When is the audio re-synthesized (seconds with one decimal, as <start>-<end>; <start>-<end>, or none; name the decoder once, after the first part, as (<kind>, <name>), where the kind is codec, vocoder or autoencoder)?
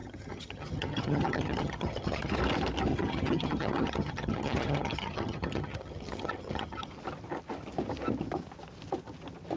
0.0-2.3 (vocoder, HiFi-GAN); 2.9-6.9